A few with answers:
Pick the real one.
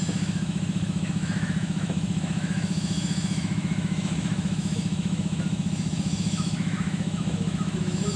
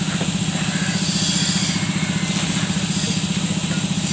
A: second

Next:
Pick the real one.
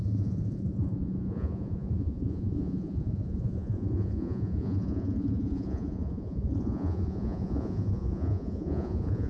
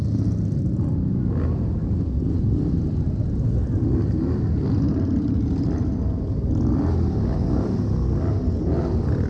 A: second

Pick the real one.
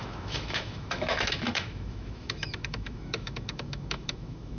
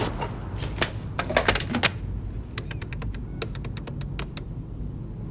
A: second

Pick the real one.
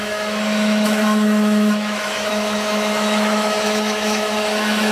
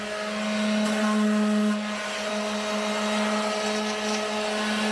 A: second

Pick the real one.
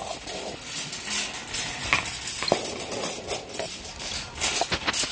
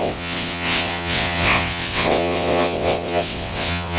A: first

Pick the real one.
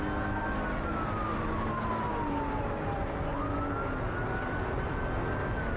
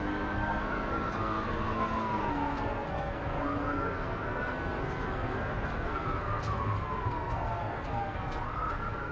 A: first